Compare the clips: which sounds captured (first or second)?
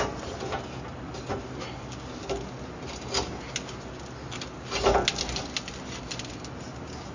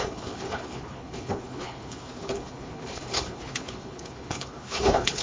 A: first